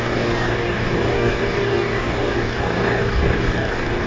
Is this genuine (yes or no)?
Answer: no